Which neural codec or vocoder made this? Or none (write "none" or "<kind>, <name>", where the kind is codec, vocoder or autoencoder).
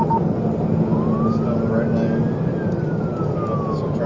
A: none